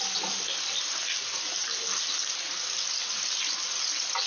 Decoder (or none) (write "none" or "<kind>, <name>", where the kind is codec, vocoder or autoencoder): none